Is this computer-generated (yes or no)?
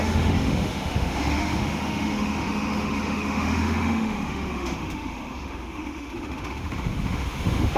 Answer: yes